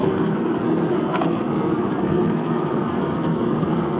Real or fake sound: fake